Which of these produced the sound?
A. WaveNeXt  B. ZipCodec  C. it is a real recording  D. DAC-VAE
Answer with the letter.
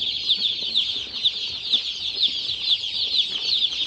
C